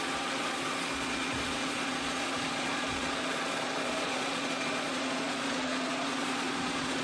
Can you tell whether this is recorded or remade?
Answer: remade